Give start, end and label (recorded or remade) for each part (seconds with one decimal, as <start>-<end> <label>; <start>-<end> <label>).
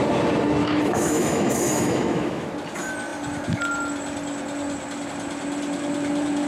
0.0-0.6 recorded; 0.6-2.5 remade; 2.5-6.5 recorded